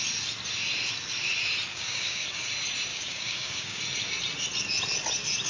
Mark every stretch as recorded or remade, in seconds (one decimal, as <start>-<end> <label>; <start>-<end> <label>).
0.0-1.7 recorded; 1.7-2.5 remade; 2.5-2.9 recorded; 2.9-3.8 remade; 3.8-5.5 recorded

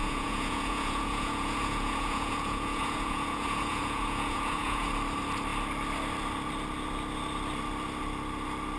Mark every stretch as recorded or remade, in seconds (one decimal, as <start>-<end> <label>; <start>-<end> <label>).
0.0-4.9 remade; 4.9-8.8 recorded